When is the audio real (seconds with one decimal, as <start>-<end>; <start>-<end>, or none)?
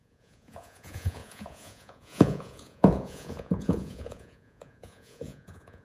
none